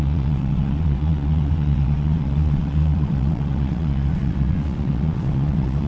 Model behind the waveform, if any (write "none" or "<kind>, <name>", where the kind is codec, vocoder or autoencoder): vocoder, WaveNeXt